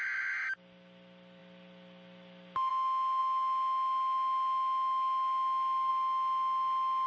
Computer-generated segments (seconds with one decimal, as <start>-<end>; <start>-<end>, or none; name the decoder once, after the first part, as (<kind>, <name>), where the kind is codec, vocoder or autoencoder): none